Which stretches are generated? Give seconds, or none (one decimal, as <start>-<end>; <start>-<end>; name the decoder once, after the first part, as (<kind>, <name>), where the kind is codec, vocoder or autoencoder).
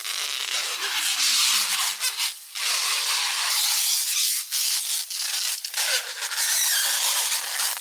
4.2-4.8 (codec, SNAC)